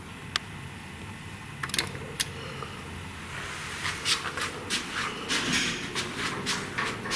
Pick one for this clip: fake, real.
real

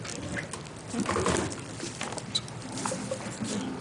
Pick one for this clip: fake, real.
real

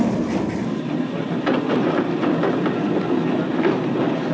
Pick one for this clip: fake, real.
real